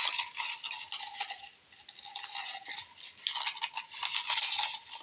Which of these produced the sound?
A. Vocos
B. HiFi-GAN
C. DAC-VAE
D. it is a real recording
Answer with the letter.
D